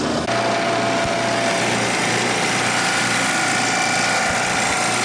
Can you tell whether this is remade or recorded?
recorded